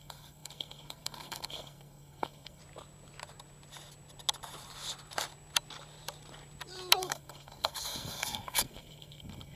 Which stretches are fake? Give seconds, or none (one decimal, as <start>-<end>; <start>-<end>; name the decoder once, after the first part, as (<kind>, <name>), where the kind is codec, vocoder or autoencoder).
0.0-2.6 (codec, SNAC); 7.0-9.6